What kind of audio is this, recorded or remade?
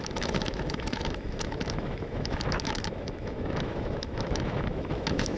remade